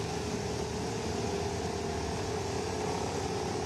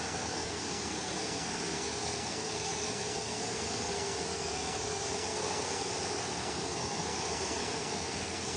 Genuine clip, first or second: first